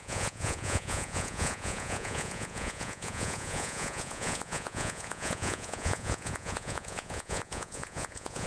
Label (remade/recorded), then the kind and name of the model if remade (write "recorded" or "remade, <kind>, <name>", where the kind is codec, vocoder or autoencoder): remade, vocoder, Vocos